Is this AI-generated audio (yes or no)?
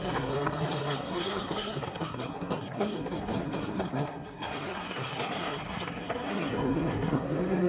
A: yes